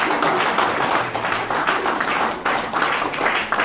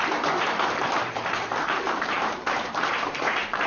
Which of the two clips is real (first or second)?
first